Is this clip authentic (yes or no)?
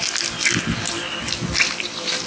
yes